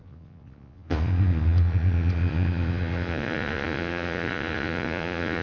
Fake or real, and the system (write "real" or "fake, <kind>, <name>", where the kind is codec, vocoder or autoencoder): fake, vocoder, Vocos